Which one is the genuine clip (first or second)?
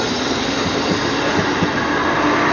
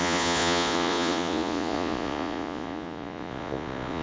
first